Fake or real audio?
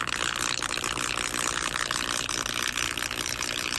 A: real